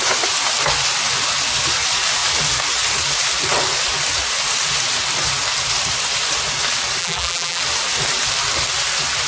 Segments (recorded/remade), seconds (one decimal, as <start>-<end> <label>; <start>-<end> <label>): 0.0-7.0 recorded; 7.0-7.6 remade; 7.6-9.3 recorded